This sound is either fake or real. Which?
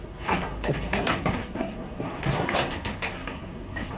fake